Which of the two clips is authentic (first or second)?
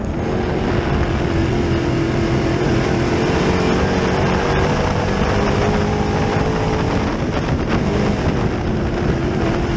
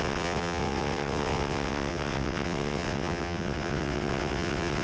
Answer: first